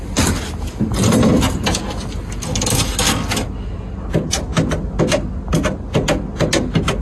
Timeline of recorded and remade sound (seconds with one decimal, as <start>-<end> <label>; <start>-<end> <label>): 0.0-7.0 recorded